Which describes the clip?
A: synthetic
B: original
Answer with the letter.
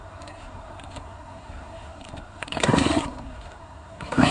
A